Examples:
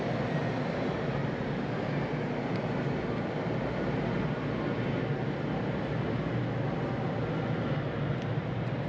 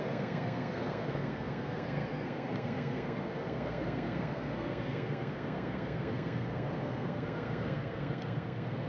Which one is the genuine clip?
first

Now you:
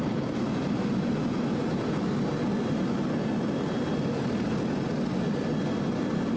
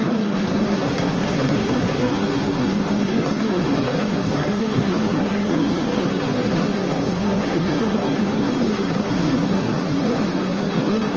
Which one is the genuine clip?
first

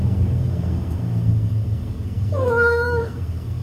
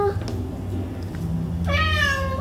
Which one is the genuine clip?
second